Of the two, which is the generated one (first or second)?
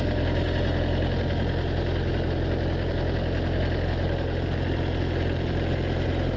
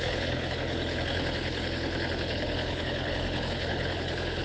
second